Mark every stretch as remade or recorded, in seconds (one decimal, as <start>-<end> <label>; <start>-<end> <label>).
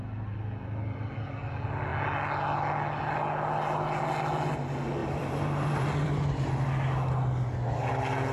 0.0-5.0 recorded; 5.0-6.5 remade; 6.5-8.3 recorded